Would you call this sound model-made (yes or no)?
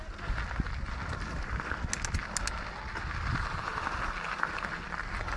no